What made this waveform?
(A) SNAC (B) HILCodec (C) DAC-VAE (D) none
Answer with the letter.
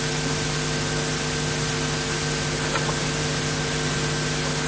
D